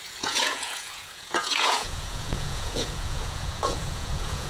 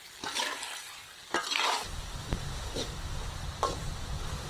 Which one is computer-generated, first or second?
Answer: first